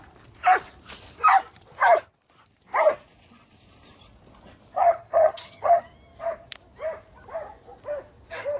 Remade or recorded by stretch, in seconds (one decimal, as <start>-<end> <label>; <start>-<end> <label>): 0.0-4.8 recorded; 4.8-5.8 remade; 5.8-8.6 recorded